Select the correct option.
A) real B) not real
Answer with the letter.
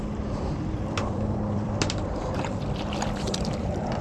B